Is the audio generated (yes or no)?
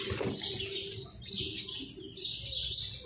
no